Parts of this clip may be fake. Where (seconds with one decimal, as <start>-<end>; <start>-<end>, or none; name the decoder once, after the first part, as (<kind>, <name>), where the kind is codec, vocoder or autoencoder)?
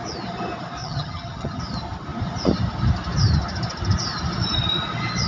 0.8-1.6 (vocoder, HiFi-GAN)